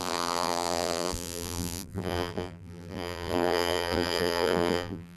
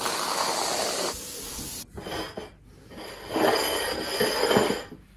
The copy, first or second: first